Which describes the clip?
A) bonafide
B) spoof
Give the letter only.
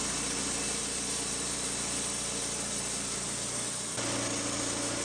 A